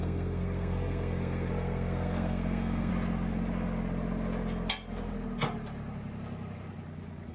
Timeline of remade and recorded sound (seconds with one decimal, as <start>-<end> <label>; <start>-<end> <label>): 0.0-2.9 remade; 2.9-7.3 recorded